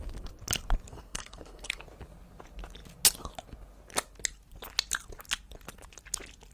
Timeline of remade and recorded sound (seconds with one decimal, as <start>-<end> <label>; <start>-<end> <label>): 0.0-0.9 recorded; 0.9-1.8 remade; 1.8-6.5 recorded